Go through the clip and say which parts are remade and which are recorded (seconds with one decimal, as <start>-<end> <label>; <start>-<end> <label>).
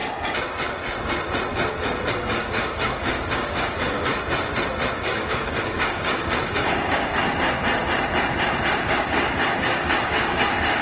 0.0-2.1 recorded; 2.1-4.1 remade; 4.1-4.9 recorded; 4.9-7.2 remade; 7.2-8.9 recorded; 8.9-10.8 remade